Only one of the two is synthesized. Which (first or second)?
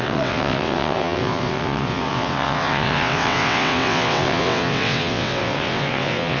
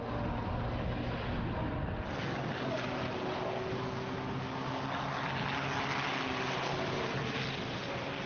first